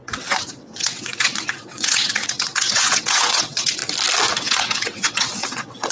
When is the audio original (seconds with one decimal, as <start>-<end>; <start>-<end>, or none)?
3.8-4.4